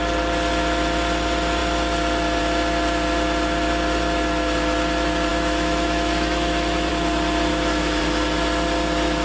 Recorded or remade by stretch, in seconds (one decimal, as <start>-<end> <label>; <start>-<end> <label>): 0.0-5.3 recorded; 5.3-6.9 remade; 6.9-7.5 recorded; 7.5-8.0 remade; 8.0-9.2 recorded